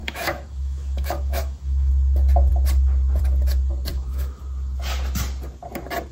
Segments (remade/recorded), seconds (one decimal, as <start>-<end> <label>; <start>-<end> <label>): 0.0-1.9 remade; 1.9-3.9 recorded; 3.9-4.4 remade; 4.4-6.1 recorded